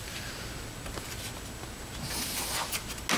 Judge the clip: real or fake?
real